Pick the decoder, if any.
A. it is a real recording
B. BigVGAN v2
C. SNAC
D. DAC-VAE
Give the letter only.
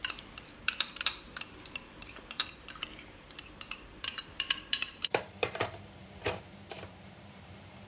B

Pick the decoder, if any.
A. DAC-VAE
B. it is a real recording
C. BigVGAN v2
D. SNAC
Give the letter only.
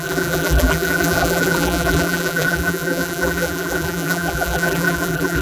C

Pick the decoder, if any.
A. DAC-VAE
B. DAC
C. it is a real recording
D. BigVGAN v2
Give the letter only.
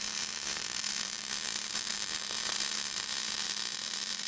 D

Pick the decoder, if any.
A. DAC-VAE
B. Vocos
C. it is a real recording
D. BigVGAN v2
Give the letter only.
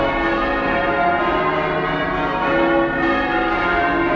C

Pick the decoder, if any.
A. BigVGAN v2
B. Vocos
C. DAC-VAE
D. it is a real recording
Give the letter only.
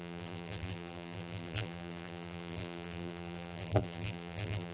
A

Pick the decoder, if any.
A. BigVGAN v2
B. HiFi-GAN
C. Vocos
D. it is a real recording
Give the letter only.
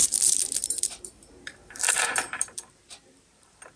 A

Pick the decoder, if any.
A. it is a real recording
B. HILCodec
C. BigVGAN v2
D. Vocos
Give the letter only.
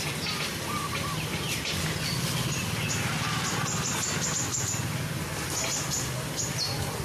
A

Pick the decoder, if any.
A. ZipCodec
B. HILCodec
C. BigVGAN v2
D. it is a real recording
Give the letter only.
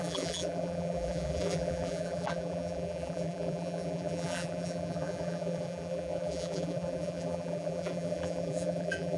C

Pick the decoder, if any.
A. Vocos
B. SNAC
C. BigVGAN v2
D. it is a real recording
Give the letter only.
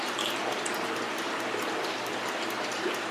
C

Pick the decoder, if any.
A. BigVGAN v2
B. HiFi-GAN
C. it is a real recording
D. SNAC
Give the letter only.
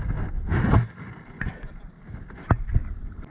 C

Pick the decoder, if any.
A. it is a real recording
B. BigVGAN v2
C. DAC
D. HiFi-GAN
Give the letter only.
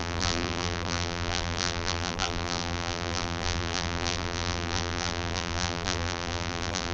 B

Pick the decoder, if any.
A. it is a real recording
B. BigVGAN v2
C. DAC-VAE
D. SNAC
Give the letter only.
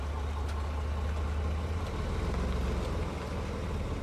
A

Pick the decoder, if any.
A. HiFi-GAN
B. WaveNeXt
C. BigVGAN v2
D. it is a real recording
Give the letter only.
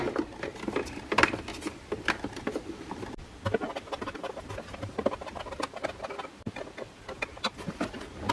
D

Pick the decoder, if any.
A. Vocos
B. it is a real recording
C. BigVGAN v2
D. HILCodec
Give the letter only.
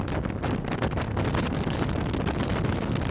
B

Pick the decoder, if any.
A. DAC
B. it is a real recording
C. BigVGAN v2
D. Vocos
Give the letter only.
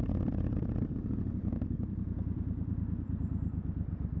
C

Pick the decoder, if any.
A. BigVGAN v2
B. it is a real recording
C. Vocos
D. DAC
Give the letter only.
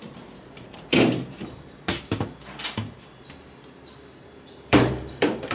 A